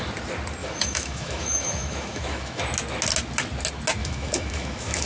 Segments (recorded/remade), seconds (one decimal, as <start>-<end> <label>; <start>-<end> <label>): 0.0-0.6 recorded; 0.6-2.6 remade; 2.6-4.0 recorded; 4.0-5.1 remade